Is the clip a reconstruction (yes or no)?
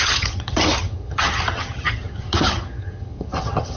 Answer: yes